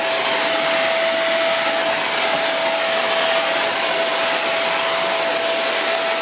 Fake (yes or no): no